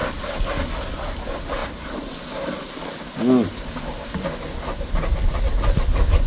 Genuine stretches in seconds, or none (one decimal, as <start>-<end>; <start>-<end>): 0.0-6.3